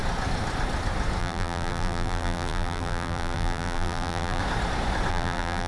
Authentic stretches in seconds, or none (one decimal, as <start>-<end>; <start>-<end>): 0.0-1.2; 4.4-5.1